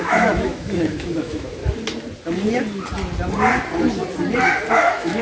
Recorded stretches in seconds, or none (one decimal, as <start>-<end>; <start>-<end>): 1.6-4.7